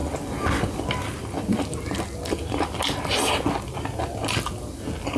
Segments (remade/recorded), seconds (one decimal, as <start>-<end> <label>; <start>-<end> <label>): 0.0-5.2 recorded